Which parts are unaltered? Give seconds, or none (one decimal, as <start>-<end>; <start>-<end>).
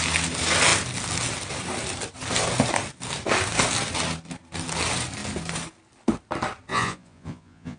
0.0-6.7